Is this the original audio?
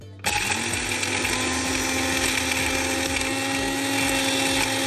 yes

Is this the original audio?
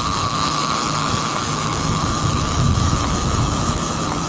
no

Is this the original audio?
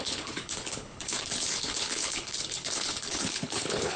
no